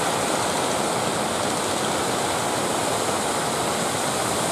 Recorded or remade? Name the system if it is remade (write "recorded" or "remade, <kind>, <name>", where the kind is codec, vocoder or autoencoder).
recorded